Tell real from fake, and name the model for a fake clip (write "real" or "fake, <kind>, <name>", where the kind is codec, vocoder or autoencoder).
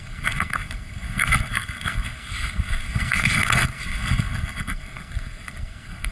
fake, codec, SNAC